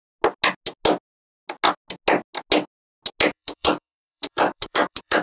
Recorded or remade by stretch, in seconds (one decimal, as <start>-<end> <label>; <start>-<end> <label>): 0.0-3.3 recorded; 3.3-5.2 remade